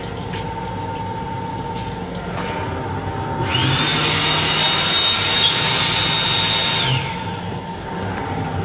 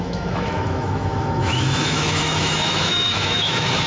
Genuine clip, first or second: first